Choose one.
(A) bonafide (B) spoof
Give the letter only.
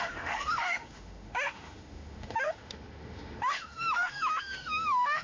B